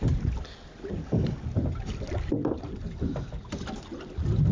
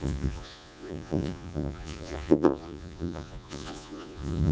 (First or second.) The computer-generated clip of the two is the second